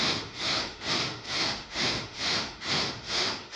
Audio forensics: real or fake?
fake